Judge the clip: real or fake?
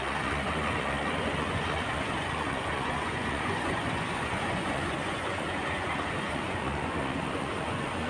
fake